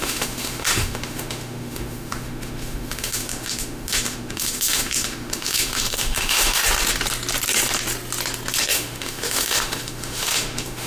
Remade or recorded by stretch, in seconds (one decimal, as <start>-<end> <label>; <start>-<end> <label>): 0.0-6.6 remade; 6.6-8.6 recorded; 8.6-10.9 remade